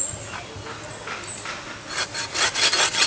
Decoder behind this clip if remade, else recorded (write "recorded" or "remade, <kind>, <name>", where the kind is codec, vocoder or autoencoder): recorded